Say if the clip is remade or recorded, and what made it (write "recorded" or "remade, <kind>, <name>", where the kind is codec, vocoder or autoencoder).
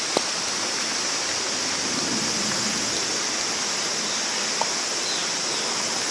recorded